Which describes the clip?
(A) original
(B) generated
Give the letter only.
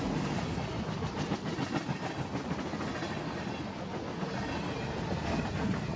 A